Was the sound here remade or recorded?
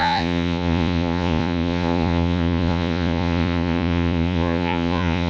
remade